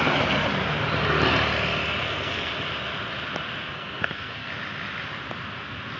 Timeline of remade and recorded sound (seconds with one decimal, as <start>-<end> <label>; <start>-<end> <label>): 0.0-2.0 recorded; 2.0-2.5 remade; 2.5-3.6 recorded; 3.6-4.5 remade; 4.5-6.0 recorded